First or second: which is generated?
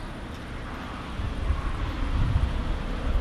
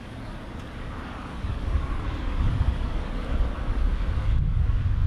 second